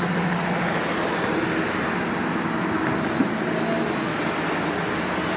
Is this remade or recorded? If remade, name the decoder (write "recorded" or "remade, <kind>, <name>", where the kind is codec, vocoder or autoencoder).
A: recorded